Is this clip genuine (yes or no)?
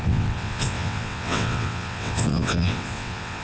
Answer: no